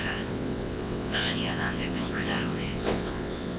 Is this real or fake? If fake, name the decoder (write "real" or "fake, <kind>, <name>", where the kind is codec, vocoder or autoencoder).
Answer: fake, vocoder, WaveNeXt